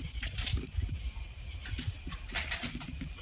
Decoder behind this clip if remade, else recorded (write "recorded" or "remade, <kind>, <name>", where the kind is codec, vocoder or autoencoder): remade, vocoder, BigVGAN v2